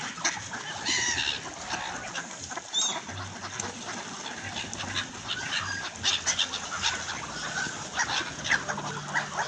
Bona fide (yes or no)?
yes